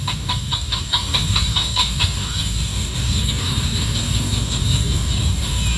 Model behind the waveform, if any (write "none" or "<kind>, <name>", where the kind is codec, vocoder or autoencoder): codec, DAC